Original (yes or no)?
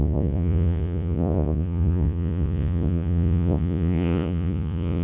no